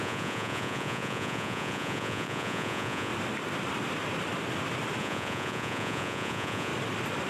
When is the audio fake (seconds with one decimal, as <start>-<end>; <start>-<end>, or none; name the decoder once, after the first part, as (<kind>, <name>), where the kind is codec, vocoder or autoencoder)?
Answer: 0.0-3.1 (vocoder, Vocos); 5.0-6.7